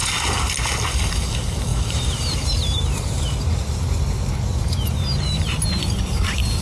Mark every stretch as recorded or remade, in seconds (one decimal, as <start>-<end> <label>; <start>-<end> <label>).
0.0-1.7 recorded; 1.7-5.7 remade; 5.7-6.6 recorded